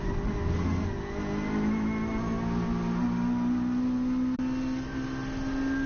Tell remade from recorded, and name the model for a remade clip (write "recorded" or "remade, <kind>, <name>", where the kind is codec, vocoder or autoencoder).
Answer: recorded